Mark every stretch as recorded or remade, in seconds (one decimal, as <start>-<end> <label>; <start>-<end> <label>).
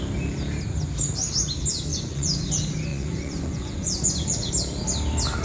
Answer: 0.0-1.9 recorded; 1.9-2.5 remade; 2.5-2.9 recorded; 2.9-4.5 remade; 4.5-5.4 recorded